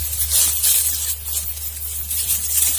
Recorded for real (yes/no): no